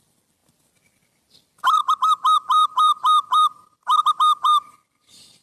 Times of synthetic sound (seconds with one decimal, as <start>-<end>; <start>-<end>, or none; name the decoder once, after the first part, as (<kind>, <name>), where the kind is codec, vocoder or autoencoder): 0.0-0.4 (vocoder, BigVGAN v2); 1.8-5.4